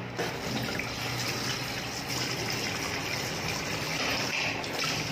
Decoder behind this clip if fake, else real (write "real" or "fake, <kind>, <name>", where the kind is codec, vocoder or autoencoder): real